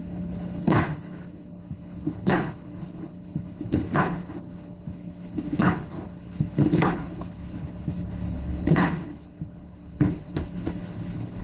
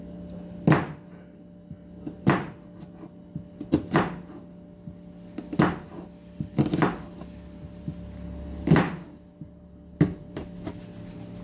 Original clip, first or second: second